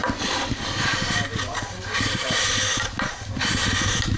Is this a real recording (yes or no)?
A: yes